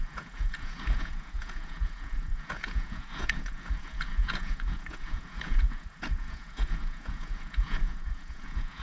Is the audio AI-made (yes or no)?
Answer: yes